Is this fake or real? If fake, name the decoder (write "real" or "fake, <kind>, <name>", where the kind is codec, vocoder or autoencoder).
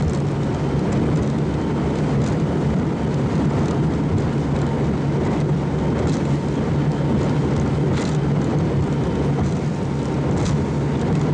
real